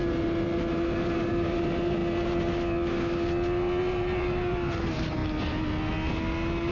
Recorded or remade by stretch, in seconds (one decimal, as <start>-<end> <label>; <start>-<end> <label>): 0.0-2.0 remade; 2.0-3.8 recorded; 3.8-5.2 remade; 5.2-6.7 recorded